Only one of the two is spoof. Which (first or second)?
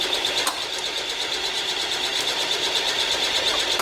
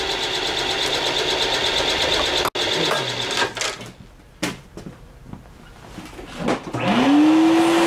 first